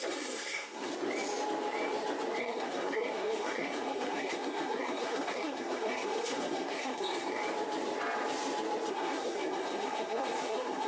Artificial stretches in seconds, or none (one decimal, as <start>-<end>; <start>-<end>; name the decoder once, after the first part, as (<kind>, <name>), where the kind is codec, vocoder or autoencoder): 0.0-0.9 (codec, SNAC); 2.4-7.4; 8.9-10.9